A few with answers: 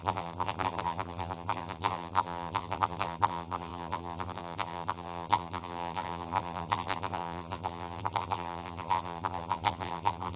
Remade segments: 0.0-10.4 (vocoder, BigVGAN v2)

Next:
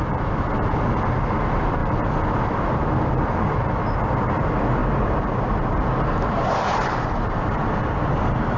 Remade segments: 4.8-7.6 (vocoder, BigVGAN v2)

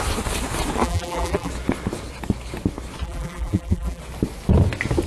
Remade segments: 0.8-1.5 (vocoder, BigVGAN v2); 3.0-4.0

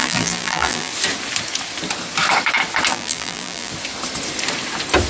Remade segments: 0.0-0.9 (vocoder, BigVGAN v2); 2.9-3.7

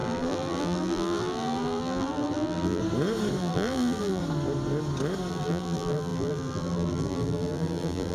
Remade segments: 0.0-2.8 (vocoder, BigVGAN v2); 3.4-4.2; 5.3-8.1

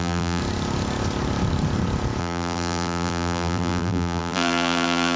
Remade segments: 0.0-0.4 (vocoder, BigVGAN v2); 2.2-5.2